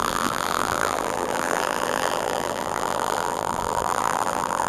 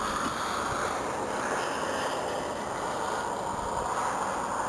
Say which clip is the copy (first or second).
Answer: first